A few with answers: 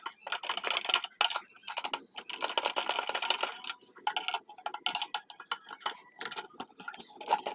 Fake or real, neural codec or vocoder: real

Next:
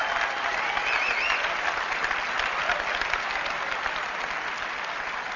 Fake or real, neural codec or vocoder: real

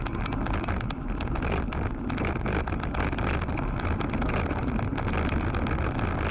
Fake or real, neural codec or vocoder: real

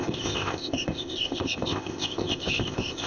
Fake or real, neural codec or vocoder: fake, codec, ZipCodec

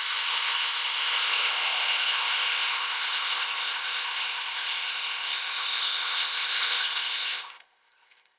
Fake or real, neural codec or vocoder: fake, codec, ZipCodec